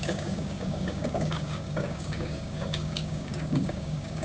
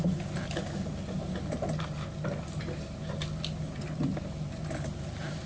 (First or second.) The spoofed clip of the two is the first